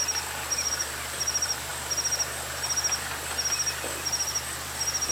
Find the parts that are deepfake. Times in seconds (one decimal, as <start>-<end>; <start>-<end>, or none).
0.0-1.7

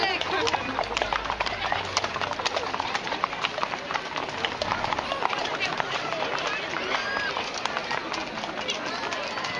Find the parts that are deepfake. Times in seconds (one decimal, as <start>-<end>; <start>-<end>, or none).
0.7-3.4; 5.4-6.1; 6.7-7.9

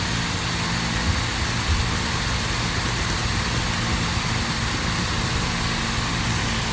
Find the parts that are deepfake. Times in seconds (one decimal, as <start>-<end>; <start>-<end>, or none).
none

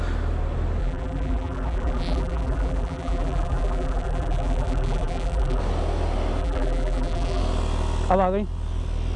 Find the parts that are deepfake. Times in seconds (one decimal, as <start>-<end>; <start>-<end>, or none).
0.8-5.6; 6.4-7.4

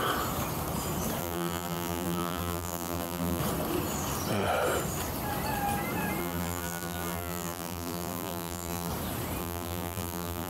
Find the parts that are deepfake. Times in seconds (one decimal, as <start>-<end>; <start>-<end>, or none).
1.2-3.4; 6.2-8.9; 9.4-10.5